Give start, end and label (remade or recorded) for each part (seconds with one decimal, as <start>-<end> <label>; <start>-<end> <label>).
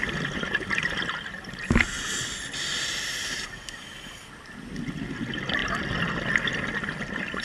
0.0-7.4 recorded